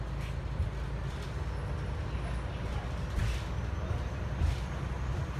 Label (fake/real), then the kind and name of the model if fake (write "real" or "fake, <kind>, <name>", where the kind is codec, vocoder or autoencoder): real